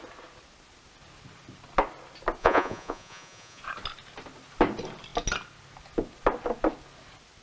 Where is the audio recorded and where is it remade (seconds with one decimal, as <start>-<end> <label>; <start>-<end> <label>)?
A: 0.0-2.4 recorded; 2.4-3.6 remade; 3.6-7.4 recorded

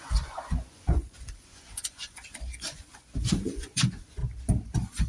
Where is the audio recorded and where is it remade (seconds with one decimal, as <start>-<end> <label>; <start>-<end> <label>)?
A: 0.0-4.2 remade; 4.2-5.1 recorded

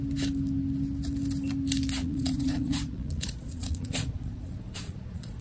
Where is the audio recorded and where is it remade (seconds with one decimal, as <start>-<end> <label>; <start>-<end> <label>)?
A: 0.0-2.0 recorded; 2.0-5.4 remade

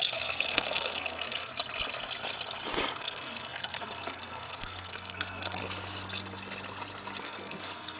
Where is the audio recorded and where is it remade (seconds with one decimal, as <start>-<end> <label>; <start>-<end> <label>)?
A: 0.0-1.5 remade; 1.5-3.0 recorded; 3.0-5.6 remade; 5.6-7.2 recorded; 7.2-8.0 remade

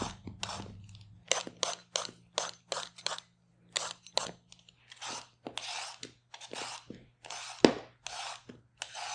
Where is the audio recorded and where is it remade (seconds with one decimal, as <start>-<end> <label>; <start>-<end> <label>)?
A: 0.0-9.1 recorded

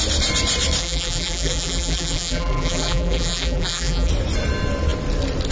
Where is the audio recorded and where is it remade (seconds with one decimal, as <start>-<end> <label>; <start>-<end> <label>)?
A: 0.0-0.8 recorded; 0.8-4.1 remade; 4.1-5.5 recorded

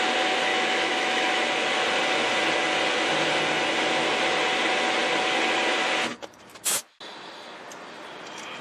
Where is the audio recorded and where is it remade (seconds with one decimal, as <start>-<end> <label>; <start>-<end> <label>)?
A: 0.0-0.5 recorded; 0.5-1.4 remade; 1.4-8.6 recorded

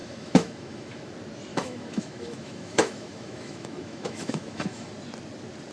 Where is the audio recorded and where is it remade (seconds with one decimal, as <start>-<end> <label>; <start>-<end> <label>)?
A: 0.0-1.1 remade; 1.1-1.5 recorded; 1.5-4.9 remade; 4.9-5.7 recorded